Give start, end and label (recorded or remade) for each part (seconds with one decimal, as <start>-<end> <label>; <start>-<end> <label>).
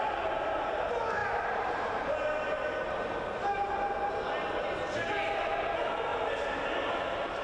0.0-7.4 recorded